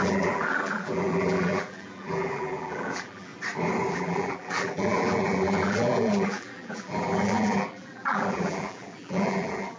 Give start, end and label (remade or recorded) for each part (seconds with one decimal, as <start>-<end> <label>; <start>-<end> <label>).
0.0-3.3 remade; 3.3-3.9 recorded; 3.9-9.8 remade